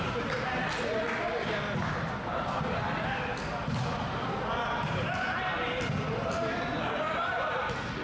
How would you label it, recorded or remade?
recorded